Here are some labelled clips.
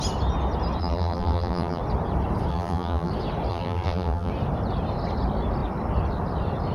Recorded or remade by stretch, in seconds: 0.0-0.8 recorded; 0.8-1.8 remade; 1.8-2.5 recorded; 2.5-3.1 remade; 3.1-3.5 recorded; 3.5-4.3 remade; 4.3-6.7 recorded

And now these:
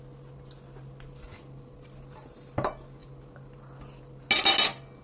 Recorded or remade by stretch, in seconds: 0.0-5.0 recorded